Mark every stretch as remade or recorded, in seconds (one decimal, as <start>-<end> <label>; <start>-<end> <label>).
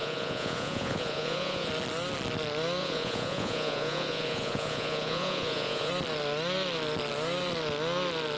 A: 0.0-1.7 remade; 1.7-2.8 recorded; 2.8-5.9 remade; 5.9-8.4 recorded